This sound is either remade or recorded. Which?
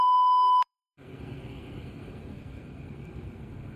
remade